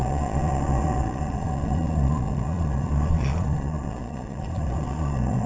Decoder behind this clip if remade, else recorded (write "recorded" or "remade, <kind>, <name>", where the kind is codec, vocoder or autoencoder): remade, vocoder, Vocos